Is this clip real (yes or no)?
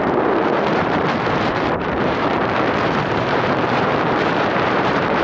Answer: no